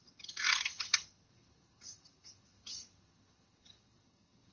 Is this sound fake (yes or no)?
yes